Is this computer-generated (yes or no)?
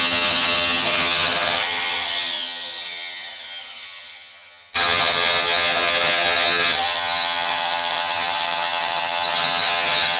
yes